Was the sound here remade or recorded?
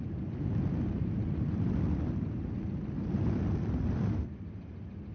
recorded